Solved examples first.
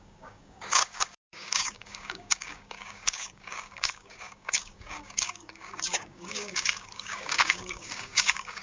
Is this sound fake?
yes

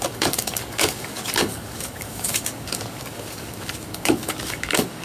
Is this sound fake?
yes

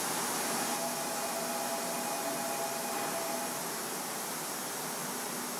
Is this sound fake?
no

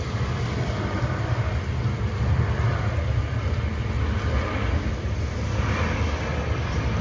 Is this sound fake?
no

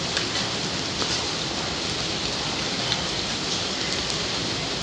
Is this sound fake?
no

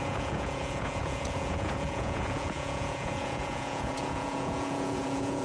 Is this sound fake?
yes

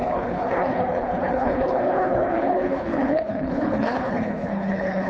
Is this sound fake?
yes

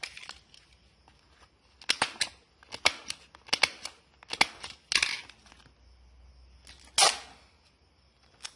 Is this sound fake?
no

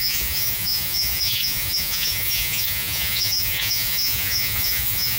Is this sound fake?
yes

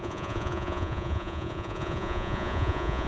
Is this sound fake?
yes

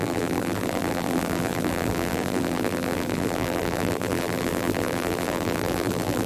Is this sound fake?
yes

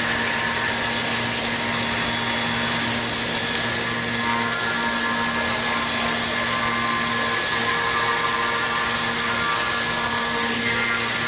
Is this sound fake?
no